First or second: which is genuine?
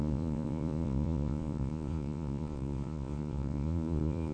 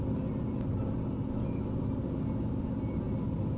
second